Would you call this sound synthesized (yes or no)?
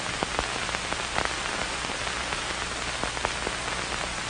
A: no